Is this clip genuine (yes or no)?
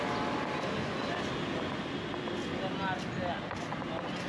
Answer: yes